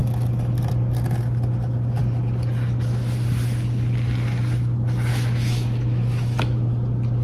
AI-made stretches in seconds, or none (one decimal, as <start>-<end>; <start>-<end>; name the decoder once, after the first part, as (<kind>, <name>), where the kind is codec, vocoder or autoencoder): 5.1-6.7 (autoencoder, DAC-VAE)